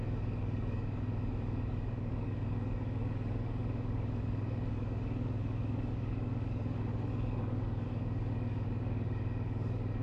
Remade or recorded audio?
remade